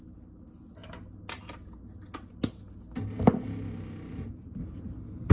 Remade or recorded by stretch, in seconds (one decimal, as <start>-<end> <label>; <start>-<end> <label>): 0.0-5.3 recorded